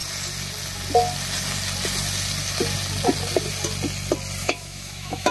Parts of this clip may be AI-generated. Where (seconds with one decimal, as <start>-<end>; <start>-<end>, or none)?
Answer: 4.4-5.3